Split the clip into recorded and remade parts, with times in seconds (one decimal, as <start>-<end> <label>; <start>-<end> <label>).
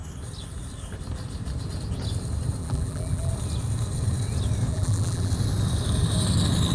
0.0-2.6 recorded; 2.6-3.3 remade; 3.3-4.7 recorded; 4.7-5.3 remade; 5.3-6.7 recorded